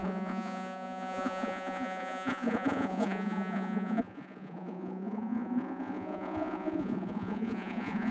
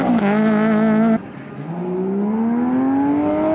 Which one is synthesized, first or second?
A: first